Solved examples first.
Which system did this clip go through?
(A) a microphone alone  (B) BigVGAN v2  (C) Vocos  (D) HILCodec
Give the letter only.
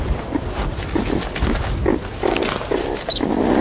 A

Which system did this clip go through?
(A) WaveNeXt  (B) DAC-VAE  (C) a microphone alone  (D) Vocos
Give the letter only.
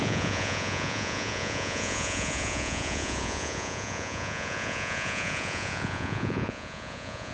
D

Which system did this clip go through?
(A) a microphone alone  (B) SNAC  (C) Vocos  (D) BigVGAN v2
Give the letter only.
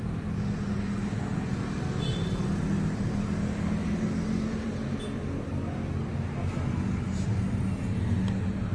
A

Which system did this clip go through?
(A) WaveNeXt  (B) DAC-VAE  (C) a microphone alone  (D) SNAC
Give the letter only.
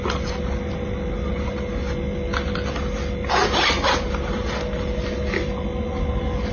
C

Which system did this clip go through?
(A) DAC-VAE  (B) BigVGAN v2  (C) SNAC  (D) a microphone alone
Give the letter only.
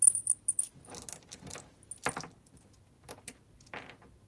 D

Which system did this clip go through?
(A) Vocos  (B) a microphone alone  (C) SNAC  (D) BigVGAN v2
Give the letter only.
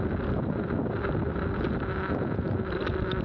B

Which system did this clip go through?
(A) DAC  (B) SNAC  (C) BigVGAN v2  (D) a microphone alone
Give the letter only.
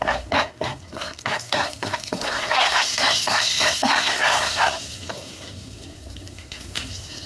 B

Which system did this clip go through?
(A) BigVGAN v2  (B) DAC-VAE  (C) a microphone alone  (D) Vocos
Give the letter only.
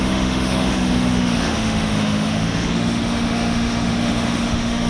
B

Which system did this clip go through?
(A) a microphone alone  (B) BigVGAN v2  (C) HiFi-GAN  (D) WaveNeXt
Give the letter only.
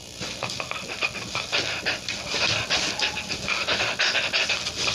B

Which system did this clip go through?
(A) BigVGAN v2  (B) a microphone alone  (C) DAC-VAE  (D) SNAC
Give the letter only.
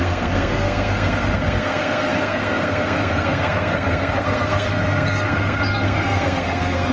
D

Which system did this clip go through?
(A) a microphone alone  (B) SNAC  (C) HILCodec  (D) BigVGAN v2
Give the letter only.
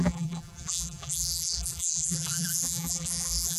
D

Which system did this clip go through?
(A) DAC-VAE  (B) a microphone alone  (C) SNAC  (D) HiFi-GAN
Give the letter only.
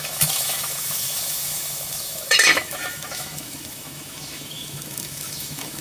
A